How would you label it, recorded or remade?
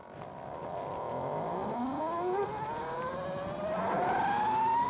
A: recorded